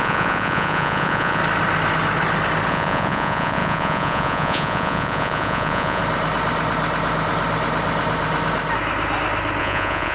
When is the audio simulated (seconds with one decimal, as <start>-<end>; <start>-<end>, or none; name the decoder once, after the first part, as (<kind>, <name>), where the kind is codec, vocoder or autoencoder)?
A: 0.0-1.4 (vocoder, Vocos); 2.7-6.0; 9.6-10.1